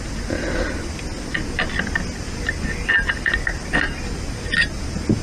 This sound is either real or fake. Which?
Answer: real